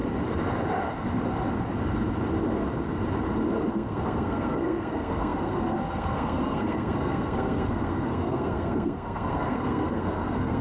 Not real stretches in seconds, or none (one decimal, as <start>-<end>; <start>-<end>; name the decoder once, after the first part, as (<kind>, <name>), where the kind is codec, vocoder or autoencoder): 3.7-10.6 (codec, SNAC)